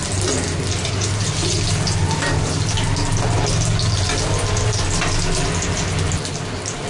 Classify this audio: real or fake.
real